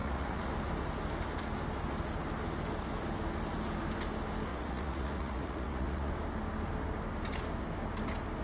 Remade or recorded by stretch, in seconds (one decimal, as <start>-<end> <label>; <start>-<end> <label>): 0.0-0.5 remade; 0.5-4.5 recorded; 4.5-6.1 remade; 6.1-8.4 recorded